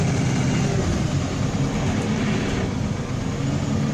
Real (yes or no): yes